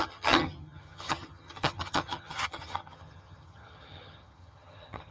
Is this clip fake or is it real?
fake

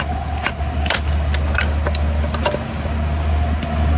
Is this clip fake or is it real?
real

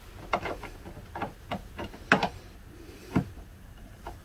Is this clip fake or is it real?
real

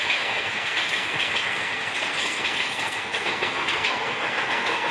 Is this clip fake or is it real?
fake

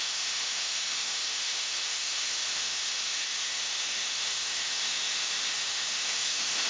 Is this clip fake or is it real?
fake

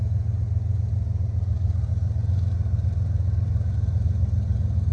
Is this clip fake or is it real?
real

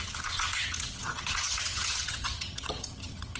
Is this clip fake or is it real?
fake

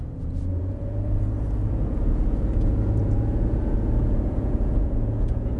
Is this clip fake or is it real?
fake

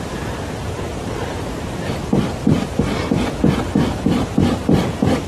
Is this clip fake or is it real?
fake